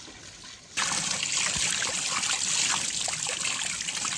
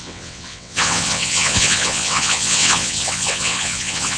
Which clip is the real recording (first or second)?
first